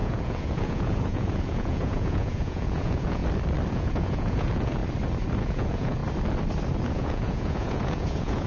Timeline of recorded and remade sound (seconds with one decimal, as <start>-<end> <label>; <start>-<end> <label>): 0.0-3.2 remade; 3.2-3.7 recorded; 3.7-4.8 remade; 4.8-5.4 recorded; 5.4-6.0 remade; 6.0-6.9 recorded; 6.9-8.5 remade